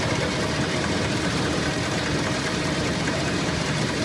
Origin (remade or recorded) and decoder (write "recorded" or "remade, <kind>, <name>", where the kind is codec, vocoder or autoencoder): remade, vocoder, BigVGAN v2